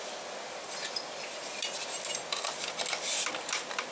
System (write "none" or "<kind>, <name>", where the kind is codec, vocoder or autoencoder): none